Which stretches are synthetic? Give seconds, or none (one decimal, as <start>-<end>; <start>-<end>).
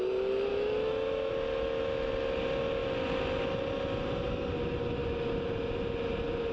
0.5-1.3